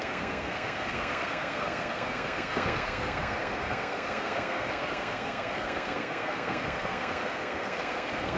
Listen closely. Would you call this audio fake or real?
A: fake